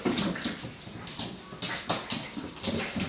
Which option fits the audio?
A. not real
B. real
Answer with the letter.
B